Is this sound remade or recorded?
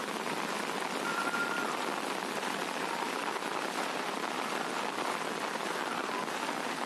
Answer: recorded